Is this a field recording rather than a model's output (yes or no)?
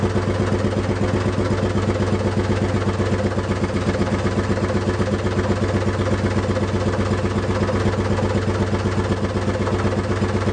yes